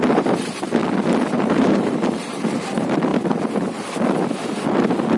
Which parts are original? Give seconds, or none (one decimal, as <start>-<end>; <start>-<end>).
0.8-1.3; 3.1-5.2